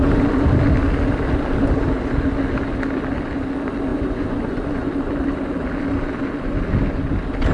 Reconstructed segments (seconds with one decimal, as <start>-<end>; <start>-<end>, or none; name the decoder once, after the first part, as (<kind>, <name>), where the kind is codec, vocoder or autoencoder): 3.9-4.8 (vocoder, Vocos)